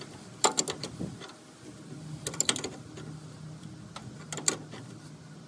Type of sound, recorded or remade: recorded